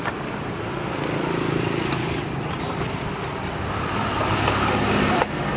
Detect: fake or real fake